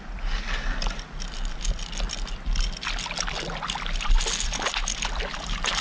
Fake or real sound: real